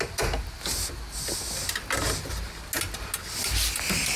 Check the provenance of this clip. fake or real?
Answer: real